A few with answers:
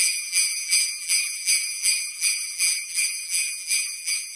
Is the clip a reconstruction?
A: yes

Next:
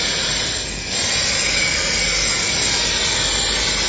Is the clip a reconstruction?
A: no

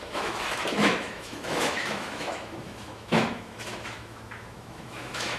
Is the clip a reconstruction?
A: yes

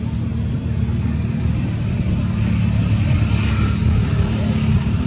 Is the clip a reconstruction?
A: no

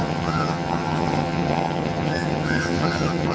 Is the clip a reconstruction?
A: yes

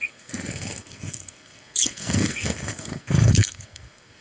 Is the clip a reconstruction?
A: yes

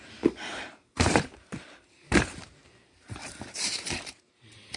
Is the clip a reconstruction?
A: yes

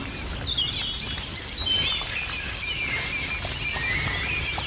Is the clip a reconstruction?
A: no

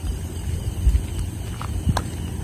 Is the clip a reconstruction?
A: no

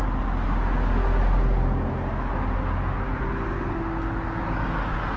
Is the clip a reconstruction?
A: no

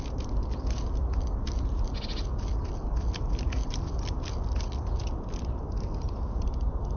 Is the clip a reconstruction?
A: no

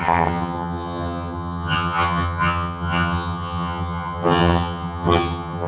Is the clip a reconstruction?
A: yes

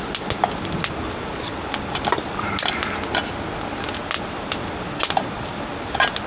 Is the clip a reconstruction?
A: no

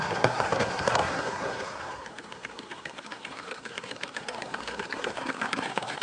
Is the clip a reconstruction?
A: yes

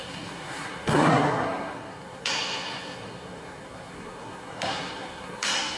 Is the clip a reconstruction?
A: yes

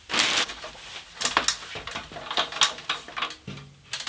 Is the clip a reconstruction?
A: no